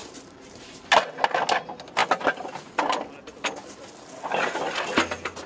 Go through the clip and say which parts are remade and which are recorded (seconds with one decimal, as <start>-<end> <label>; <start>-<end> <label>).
0.0-0.9 remade; 0.9-5.5 recorded